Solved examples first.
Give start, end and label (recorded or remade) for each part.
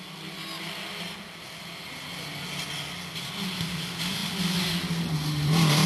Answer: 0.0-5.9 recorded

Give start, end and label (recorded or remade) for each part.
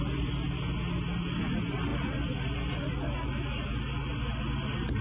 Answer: 0.0-5.0 recorded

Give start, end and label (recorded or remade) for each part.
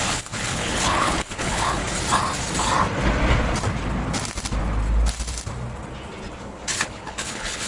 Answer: 0.0-1.8 remade; 1.8-6.4 recorded; 6.4-7.7 remade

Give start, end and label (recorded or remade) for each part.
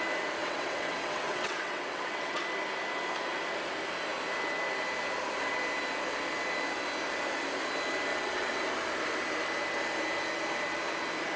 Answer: 0.0-0.4 recorded; 0.4-2.4 remade; 2.4-8.1 recorded; 8.1-8.6 remade; 8.6-11.4 recorded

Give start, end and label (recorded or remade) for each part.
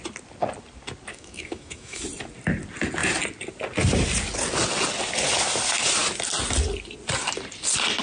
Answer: 0.0-1.1 recorded; 1.1-2.0 remade; 2.0-8.0 recorded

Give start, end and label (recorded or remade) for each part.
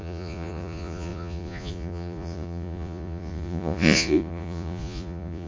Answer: 0.0-5.5 remade